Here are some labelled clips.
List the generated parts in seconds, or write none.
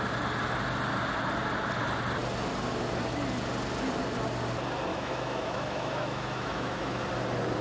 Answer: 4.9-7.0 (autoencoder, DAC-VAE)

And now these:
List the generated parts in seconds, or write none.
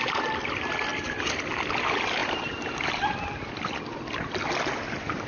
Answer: 0.9-1.5 (vocoder, BigVGAN v2)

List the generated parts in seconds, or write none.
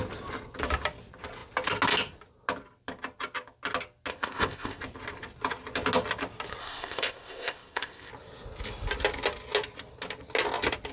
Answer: 4.1-4.8 (codec, ZipCodec); 6.6-8.1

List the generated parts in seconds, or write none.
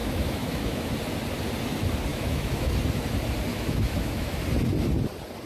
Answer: 0.0-0.9 (autoencoder, DAC-VAE); 2.1-2.7; 3.5-4.4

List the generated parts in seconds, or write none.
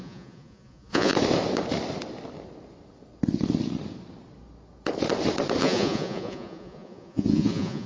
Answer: 0.0-1.1 (vocoder, Vocos); 5.6-7.9